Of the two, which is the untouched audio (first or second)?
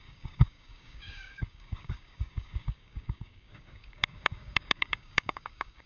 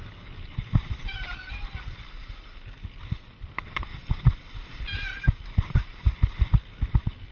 second